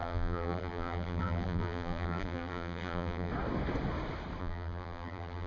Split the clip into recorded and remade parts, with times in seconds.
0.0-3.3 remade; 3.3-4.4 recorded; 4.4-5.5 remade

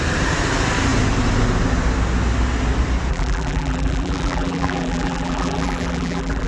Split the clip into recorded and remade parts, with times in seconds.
0.0-3.1 recorded; 3.1-6.5 remade

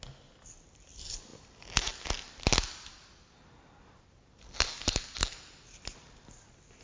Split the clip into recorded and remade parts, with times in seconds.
0.0-6.8 recorded

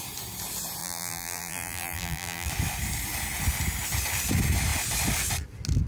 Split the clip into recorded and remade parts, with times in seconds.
0.0-0.8 recorded; 0.8-2.5 remade; 2.5-5.9 recorded

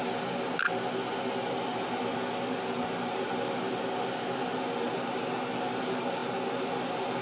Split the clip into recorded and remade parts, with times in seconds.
0.0-7.2 recorded

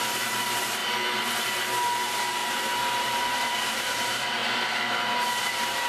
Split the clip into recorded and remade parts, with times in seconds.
0.0-0.8 remade; 0.8-1.4 recorded; 1.4-2.4 remade; 2.4-3.0 recorded; 3.0-4.4 remade; 4.4-5.4 recorded; 5.4-5.9 remade